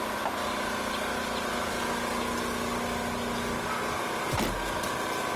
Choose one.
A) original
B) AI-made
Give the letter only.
A